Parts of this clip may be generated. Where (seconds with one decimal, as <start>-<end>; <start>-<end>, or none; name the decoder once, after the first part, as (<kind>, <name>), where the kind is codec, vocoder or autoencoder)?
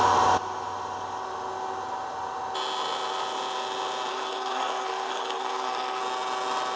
4.1-6.0 (codec, SNAC)